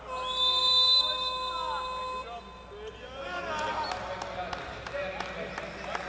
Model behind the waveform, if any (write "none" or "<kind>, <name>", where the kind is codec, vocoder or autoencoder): none